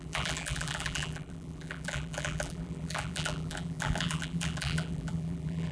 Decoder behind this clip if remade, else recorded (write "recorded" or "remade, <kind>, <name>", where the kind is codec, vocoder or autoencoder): remade, vocoder, BigVGAN v2